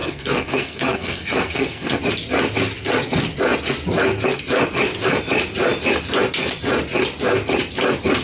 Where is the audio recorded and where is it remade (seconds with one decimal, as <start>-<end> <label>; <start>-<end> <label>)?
0.0-2.0 remade; 2.0-8.2 recorded